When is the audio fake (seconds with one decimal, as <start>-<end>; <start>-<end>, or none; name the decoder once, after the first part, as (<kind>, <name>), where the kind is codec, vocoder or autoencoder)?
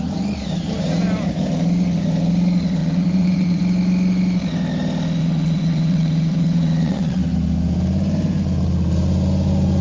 2.8-3.6 (vocoder, WaveNeXt); 5.2-7.2